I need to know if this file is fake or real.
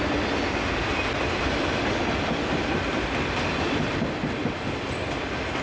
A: real